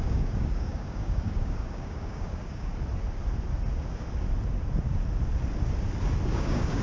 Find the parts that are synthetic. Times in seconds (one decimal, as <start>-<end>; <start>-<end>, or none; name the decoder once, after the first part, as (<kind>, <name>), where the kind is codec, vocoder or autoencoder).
0.0-2.7 (codec, DAC); 6.3-6.8